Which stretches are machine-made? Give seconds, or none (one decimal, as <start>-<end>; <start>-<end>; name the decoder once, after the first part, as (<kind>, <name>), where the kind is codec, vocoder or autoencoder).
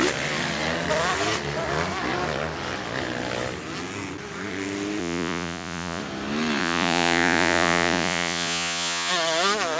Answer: 5.0-6.0 (vocoder, Vocos); 6.6-9.1